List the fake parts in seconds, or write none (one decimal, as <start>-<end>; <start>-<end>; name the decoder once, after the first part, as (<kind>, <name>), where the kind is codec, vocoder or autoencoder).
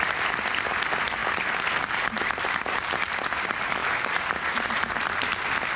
none